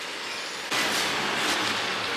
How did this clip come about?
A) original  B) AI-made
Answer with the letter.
B